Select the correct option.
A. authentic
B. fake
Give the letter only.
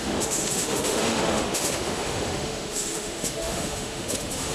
B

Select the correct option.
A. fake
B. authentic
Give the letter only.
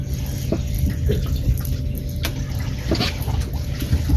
B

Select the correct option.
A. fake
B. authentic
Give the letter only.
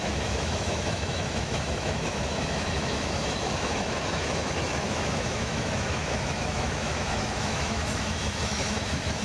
A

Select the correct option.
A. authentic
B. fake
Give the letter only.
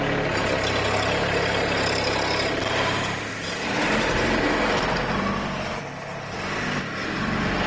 A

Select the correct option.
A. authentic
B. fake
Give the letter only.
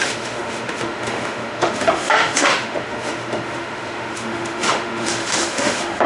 B